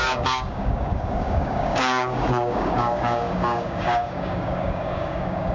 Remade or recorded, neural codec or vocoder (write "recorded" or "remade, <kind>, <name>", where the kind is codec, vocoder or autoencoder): remade, codec, DAC